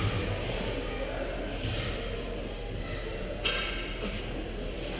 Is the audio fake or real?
real